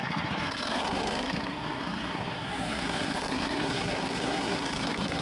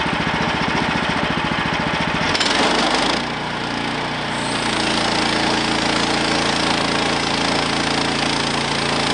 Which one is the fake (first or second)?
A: first